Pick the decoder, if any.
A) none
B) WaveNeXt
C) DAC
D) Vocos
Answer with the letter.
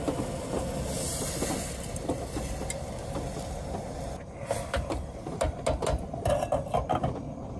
A